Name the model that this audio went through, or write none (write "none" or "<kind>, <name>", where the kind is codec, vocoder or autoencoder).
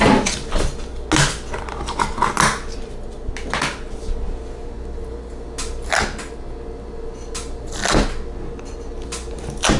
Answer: none